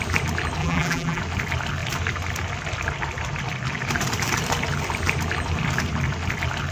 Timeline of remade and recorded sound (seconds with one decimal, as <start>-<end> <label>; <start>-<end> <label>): 0.0-0.6 recorded; 0.6-1.2 remade; 1.2-6.7 recorded